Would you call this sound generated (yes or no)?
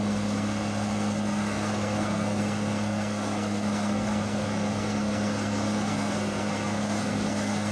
yes